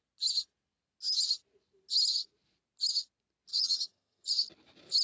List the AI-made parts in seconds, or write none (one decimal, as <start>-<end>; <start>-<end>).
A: 3.5-4.3